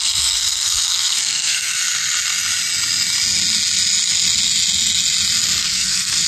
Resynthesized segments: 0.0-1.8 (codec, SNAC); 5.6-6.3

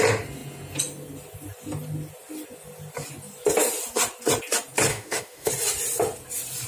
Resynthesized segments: 4.9-5.5 (autoencoder, DAC-VAE)

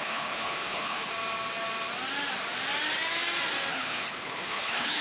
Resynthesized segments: 0.0-1.1 (codec, HILCodec); 3.7-5.0

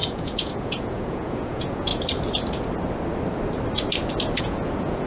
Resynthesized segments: 0.0-1.9 (vocoder, Vocos); 4.4-5.1

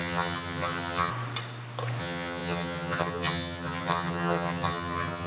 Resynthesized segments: 0.0-1.1 (vocoder, HiFi-GAN); 2.0-5.3

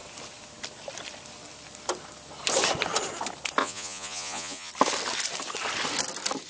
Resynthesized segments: 3.6-4.7 (vocoder, Vocos)

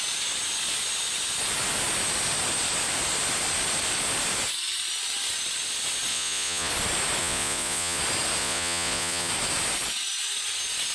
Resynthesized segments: 6.1-6.7 (vocoder, Vocos); 7.2-8.0; 8.4-9.3

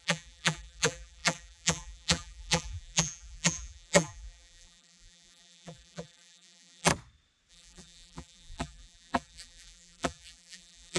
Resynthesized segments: 0.0-6.9 (vocoder, BigVGAN v2); 7.5-11.0